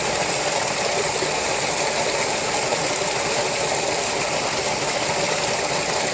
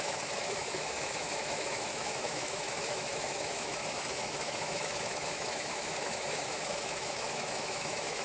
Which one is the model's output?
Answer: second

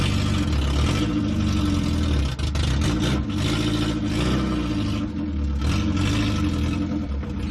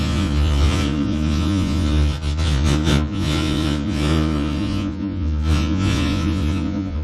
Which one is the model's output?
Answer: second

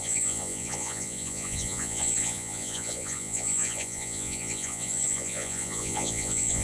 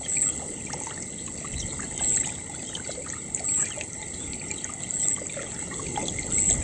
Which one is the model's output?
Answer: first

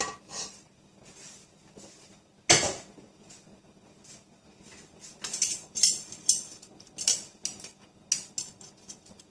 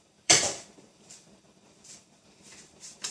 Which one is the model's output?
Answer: second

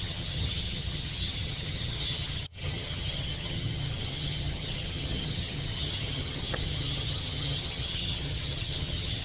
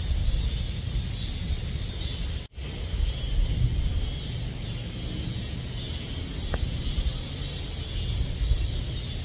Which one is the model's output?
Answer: first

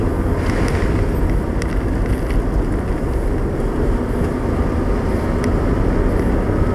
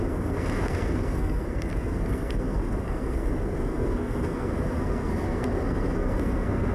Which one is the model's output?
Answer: second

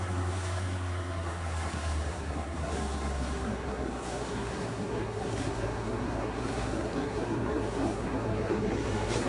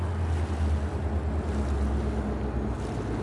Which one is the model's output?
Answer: first